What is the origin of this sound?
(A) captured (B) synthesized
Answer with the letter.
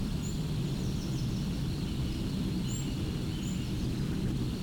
A